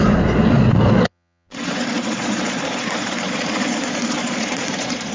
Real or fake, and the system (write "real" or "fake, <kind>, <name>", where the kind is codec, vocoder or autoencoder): fake, vocoder, Vocos